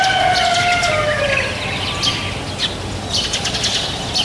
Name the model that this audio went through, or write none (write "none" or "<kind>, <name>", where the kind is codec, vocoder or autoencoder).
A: none